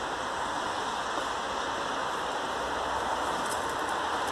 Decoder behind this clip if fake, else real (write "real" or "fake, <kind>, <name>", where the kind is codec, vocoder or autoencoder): real